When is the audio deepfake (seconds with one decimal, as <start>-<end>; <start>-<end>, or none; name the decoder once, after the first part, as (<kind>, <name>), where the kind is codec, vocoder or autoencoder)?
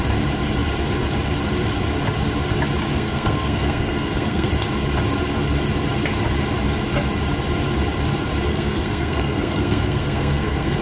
2.9-4.5 (codec, SNAC); 8.5-10.8